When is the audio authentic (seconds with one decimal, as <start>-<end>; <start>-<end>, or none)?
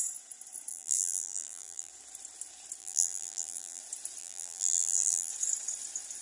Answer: 0.0-0.7; 1.9-2.8; 3.8-4.2; 5.3-6.2